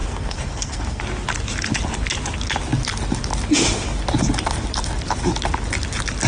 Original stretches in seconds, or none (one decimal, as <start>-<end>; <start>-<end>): 1.0-6.3